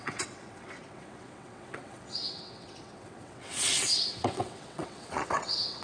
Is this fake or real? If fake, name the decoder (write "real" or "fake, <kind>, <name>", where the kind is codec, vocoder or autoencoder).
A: fake, vocoder, WaveNeXt